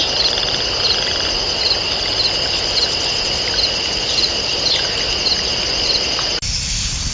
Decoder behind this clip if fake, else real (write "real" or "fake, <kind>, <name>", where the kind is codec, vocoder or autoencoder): real